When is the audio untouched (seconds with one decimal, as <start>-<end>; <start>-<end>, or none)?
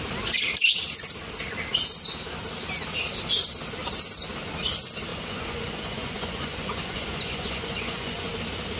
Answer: 0.0-5.1; 8.3-8.8